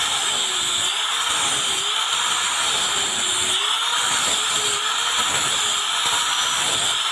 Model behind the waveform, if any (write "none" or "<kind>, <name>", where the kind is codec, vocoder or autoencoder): none